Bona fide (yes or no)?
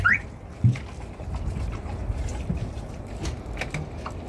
yes